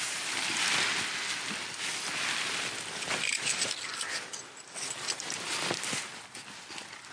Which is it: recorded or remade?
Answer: recorded